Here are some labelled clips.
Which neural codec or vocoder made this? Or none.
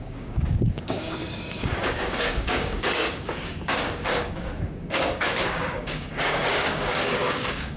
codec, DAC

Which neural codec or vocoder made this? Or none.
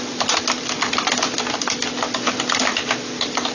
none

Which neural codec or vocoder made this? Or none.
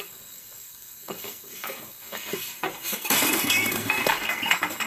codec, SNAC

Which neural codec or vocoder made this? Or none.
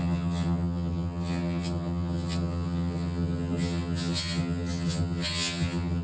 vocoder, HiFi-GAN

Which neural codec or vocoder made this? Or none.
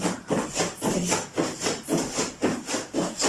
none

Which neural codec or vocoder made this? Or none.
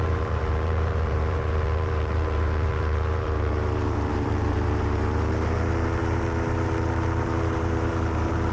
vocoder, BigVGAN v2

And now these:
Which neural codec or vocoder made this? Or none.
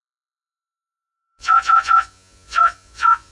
vocoder, Vocos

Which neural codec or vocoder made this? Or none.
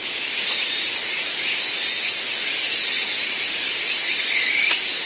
none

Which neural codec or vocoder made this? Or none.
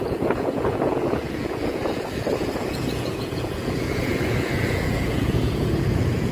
vocoder, Vocos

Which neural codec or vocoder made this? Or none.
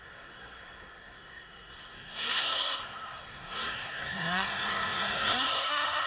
codec, SNAC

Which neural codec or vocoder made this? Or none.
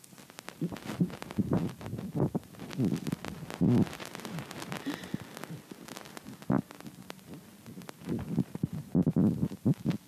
none